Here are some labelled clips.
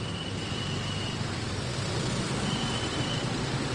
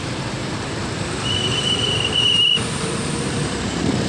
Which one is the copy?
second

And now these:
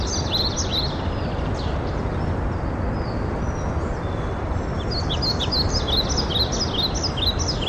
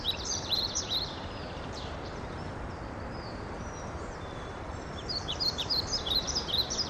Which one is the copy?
second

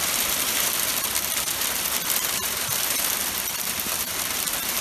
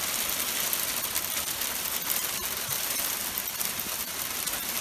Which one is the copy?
first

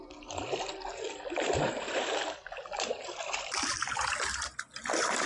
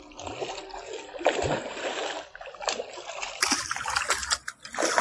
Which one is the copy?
first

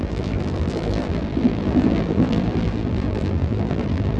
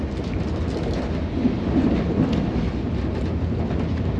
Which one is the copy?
first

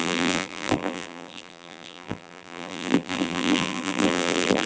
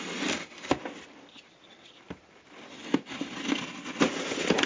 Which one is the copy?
first